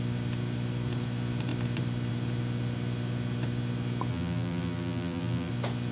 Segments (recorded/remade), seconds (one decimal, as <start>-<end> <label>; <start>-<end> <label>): 0.0-4.1 recorded; 4.1-5.5 remade; 5.5-5.9 recorded